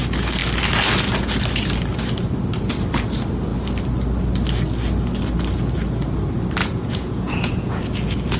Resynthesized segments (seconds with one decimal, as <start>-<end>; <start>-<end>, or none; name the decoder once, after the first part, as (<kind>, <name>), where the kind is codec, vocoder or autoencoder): 6.6-7.8 (vocoder, Vocos)